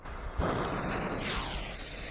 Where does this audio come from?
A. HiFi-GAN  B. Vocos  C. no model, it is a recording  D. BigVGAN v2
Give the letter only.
C